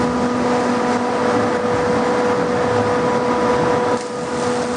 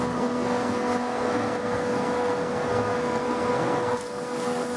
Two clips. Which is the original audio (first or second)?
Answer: first